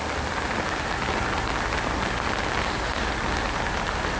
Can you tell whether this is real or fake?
real